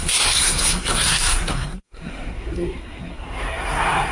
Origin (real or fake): fake